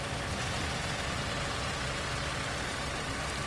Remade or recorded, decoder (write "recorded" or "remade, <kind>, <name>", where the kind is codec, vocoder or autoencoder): recorded